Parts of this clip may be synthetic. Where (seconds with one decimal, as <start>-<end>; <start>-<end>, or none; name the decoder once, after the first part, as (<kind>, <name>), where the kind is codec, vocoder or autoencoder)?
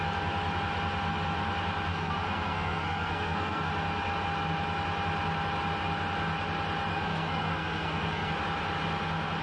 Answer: 1.9-3.7 (codec, SNAC); 6.9-8.3